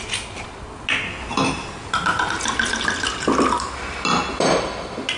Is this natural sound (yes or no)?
yes